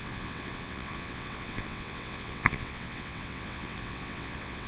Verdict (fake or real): fake